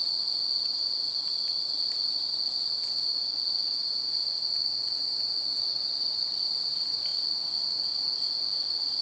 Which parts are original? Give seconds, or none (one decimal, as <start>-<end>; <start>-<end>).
0.0-9.0